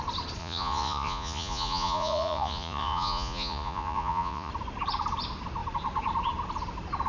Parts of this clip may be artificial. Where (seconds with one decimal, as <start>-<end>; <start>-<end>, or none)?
0.4-4.5